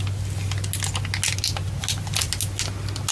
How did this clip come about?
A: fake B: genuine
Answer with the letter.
B